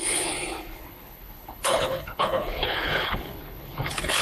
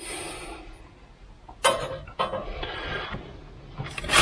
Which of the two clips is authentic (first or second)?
second